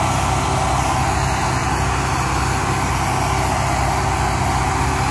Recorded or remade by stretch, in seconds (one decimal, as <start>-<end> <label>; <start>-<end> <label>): 0.0-5.1 recorded